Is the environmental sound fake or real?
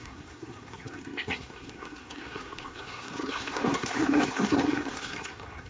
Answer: fake